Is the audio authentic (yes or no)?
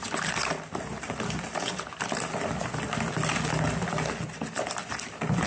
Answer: yes